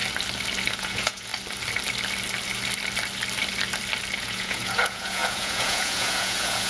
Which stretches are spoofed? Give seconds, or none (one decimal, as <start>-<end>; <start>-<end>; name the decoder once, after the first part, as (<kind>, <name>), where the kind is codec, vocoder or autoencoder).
0.7-1.3 (vocoder, Vocos); 4.2-6.7